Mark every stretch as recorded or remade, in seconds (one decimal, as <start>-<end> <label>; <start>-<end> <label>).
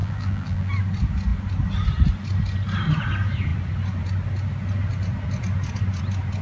0.0-0.7 remade; 0.7-6.4 recorded